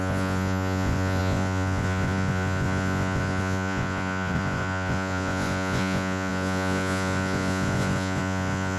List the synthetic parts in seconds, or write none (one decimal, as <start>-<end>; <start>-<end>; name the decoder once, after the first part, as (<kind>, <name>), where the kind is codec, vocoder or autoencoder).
0.0-8.8 (vocoder, Vocos)